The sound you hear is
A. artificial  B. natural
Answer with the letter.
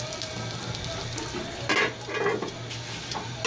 B